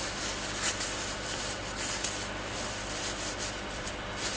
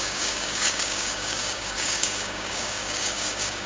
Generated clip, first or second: second